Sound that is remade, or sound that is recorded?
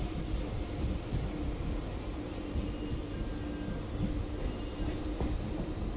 recorded